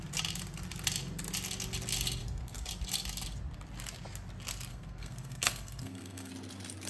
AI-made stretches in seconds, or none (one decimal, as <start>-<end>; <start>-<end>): 2.2-2.7; 4.7-6.3